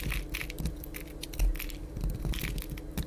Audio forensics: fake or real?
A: real